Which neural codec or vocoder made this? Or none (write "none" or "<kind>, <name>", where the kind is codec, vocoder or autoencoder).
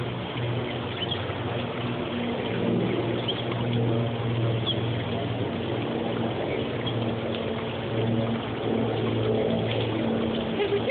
none